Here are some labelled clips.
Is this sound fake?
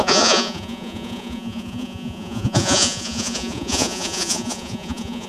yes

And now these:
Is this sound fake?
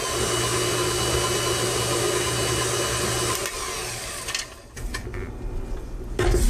no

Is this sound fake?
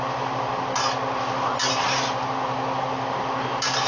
no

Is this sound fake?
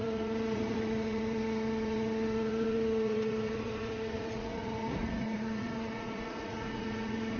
yes